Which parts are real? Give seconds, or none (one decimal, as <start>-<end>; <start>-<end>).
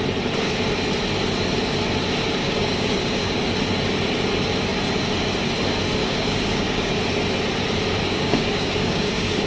0.0-2.4; 3.3-6.0; 6.9-8.0